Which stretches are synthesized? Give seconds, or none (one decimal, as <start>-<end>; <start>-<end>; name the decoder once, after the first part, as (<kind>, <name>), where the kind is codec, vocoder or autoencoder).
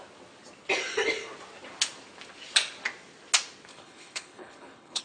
3.7-5.0 (codec, HILCodec)